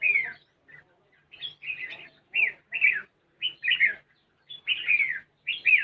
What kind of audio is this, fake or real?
real